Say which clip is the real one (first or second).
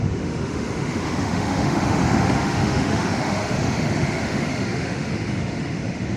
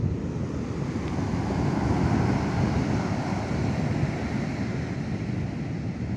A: second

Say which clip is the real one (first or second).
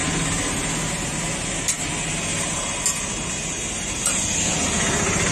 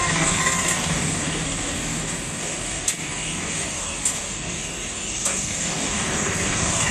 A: first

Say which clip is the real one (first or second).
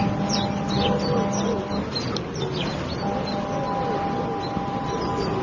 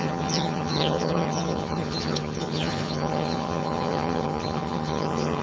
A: first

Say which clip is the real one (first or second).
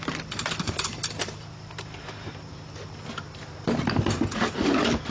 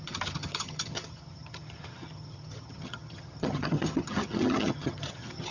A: first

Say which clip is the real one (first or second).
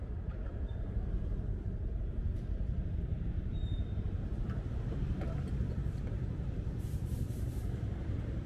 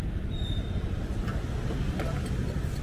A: second